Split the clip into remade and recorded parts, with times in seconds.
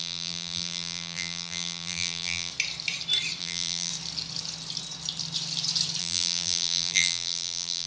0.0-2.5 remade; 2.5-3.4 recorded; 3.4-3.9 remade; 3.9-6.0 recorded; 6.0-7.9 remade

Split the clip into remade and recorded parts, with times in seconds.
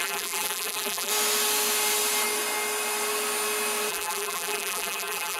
0.0-1.1 remade; 1.1-3.9 recorded; 3.9-5.4 remade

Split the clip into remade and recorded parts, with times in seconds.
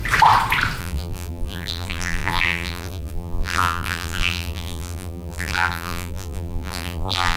0.0-0.8 recorded; 0.8-7.4 remade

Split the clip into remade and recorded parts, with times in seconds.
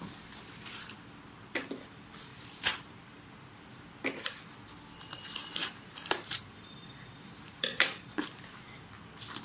0.0-2.3 recorded; 2.3-3.2 remade; 3.2-5.6 recorded; 5.6-8.4 remade; 8.4-9.4 recorded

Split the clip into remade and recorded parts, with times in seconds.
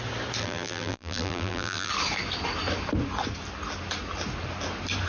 0.0-0.4 recorded; 0.4-1.9 remade; 1.9-5.1 recorded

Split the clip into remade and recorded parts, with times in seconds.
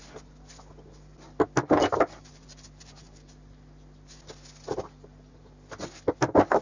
0.0-1.8 recorded; 1.8-3.3 remade; 3.3-6.6 recorded